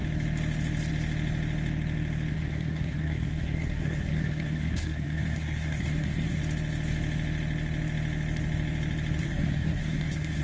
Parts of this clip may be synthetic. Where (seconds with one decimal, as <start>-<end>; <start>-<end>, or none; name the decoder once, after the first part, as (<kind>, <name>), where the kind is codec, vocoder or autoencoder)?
2.3-6.4 (codec, SNAC); 9.2-10.4